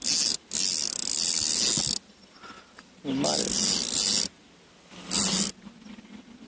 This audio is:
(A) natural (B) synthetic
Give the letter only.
A